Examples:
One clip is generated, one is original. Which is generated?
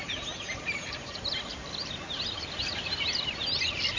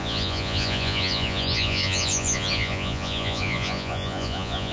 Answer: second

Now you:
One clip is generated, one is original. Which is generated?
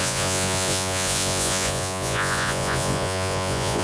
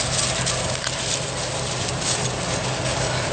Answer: first